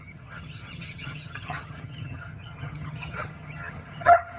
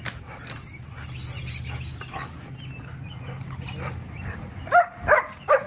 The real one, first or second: second